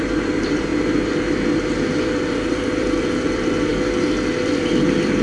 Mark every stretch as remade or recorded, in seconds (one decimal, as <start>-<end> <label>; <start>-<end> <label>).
0.0-0.7 remade; 0.7-2.5 recorded; 2.5-3.7 remade; 3.7-4.3 recorded; 4.3-5.2 remade